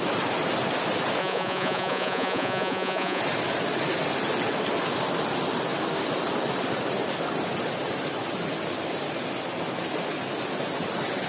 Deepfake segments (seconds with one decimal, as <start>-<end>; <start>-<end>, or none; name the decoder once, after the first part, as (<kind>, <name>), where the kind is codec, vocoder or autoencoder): 1.2-3.2 (vocoder, Vocos)